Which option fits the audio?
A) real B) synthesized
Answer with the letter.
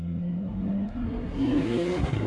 B